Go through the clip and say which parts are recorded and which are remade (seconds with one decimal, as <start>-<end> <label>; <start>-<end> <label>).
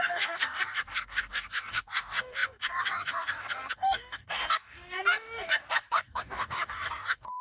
0.0-7.4 remade